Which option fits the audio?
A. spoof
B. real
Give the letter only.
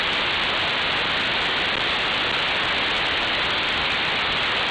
B